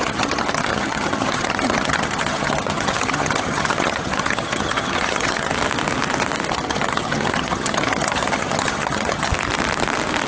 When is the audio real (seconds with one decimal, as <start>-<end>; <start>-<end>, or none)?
5.5-6.5; 9.3-10.3